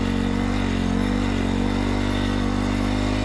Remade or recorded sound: recorded